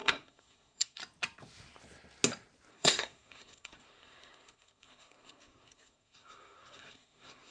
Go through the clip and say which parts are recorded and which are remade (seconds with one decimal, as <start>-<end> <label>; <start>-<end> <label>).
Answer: 0.0-1.0 remade; 1.0-2.7 recorded; 2.7-7.5 remade